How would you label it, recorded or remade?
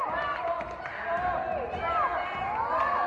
recorded